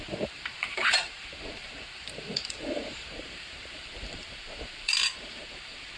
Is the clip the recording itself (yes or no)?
no